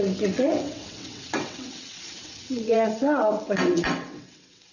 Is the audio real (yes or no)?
no